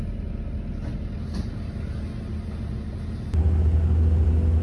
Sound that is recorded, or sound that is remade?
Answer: recorded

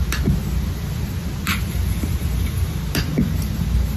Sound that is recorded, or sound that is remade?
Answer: recorded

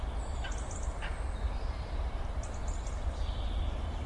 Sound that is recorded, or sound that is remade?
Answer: recorded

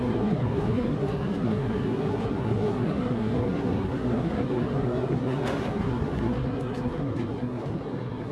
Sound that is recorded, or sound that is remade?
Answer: remade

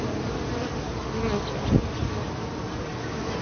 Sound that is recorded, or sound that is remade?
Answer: recorded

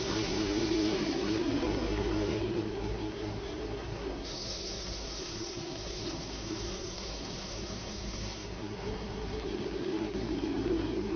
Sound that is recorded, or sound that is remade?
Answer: remade